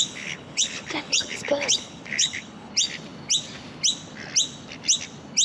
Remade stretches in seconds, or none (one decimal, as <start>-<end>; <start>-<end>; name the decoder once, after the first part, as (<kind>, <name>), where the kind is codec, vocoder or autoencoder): 0.0-2.7 (codec, HILCodec)